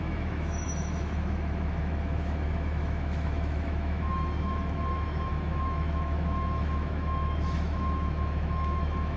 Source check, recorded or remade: remade